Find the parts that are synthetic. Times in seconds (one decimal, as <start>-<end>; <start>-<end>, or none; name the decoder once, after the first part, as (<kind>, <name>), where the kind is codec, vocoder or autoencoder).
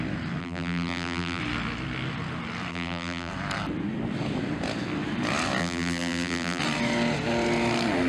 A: 0.4-1.4 (vocoder, BigVGAN v2); 2.7-3.3; 5.6-6.6